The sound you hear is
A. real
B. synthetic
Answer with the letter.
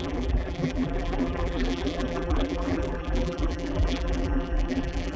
B